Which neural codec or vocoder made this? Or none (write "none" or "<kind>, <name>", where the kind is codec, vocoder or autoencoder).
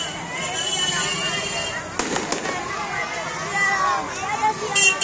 none